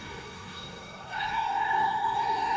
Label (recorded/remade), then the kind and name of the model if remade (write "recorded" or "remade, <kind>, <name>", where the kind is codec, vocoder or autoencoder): remade, codec, SNAC